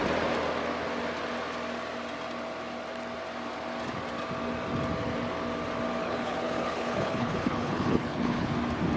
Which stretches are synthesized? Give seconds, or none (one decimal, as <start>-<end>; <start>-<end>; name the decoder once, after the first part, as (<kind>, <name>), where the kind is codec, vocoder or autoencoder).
6.0-8.5 (codec, HILCodec)